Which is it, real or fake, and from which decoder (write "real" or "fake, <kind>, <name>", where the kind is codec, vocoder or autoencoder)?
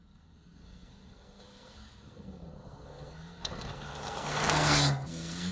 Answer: fake, codec, SNAC